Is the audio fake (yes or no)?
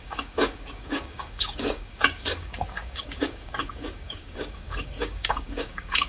yes